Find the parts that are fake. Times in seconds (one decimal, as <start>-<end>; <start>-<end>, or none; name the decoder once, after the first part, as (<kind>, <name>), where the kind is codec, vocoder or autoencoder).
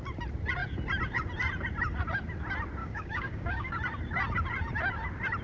2.8-3.7 (codec, DAC)